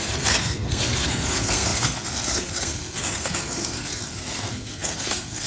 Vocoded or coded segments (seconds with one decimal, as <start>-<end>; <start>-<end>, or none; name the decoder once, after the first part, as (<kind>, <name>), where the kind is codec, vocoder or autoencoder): 0.0-5.5 (codec, SNAC)